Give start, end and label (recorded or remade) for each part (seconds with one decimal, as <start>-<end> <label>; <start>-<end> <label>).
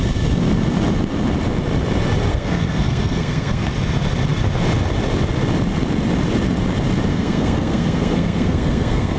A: 0.0-2.3 recorded; 2.3-3.7 remade; 3.7-7.1 recorded; 7.1-9.2 remade